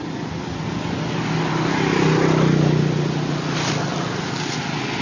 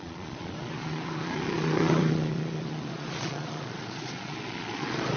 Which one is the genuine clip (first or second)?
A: first